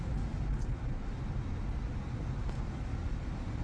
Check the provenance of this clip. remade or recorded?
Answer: recorded